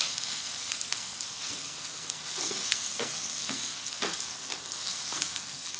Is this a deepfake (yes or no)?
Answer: yes